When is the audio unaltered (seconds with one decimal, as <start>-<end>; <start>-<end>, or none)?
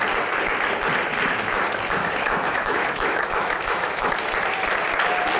0.0-2.0; 4.1-5.4